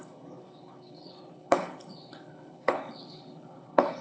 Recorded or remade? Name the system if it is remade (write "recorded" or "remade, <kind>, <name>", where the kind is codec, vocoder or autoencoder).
remade, codec, HILCodec